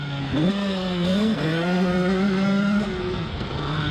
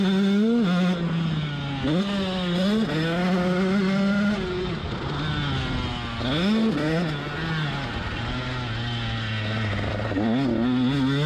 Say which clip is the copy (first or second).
first